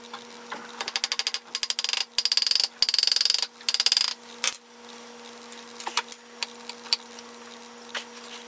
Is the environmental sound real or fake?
real